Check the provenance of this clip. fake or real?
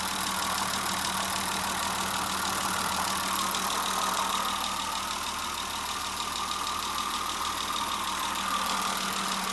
real